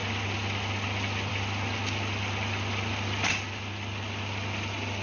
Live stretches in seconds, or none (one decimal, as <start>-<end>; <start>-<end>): 0.0-5.0